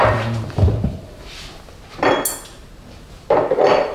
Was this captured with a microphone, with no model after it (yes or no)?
yes